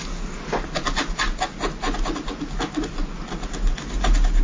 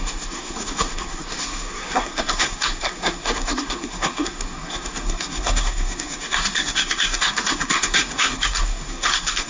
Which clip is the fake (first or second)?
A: second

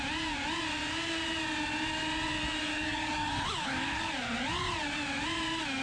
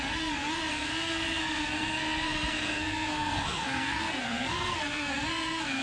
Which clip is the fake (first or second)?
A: second